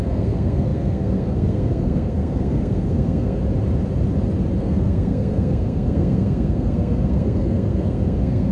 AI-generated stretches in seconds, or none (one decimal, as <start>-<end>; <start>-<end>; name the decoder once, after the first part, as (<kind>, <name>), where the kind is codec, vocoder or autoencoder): 0.0-3.4 (codec, SNAC); 4.6-8.5

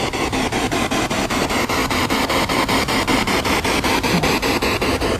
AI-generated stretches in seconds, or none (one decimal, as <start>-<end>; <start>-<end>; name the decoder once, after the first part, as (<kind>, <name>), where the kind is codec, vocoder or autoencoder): none

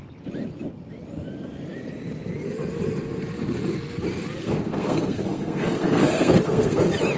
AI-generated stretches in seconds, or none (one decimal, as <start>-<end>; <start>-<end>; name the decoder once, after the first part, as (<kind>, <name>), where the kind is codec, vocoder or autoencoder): 4.4-6.8 (codec, SNAC)

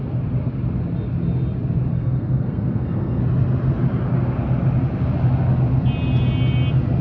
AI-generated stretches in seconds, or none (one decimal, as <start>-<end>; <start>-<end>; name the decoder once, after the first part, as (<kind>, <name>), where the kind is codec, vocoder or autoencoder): 1.9-3.2 (codec, SNAC)